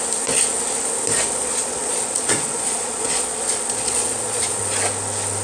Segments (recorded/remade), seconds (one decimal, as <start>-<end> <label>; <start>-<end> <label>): 0.0-1.4 recorded; 1.4-4.6 remade; 4.6-5.4 recorded

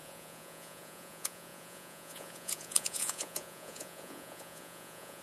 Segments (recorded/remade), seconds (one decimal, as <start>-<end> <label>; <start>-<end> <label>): 0.0-5.2 remade